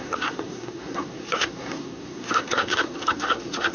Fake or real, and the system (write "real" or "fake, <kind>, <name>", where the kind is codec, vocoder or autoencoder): fake, codec, SNAC